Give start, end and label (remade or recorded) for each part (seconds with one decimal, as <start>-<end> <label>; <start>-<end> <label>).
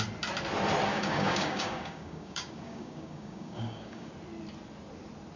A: 0.0-0.9 recorded; 0.9-4.1 remade; 4.1-5.4 recorded